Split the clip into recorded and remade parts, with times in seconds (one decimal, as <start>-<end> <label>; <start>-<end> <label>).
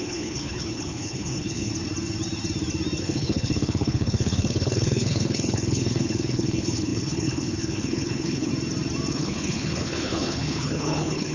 0.0-1.7 remade; 1.7-3.0 recorded; 3.0-8.5 remade; 8.5-9.1 recorded; 9.1-11.3 remade